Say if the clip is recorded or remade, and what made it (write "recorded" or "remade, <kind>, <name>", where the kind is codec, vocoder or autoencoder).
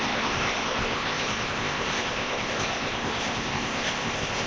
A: remade, codec, ZipCodec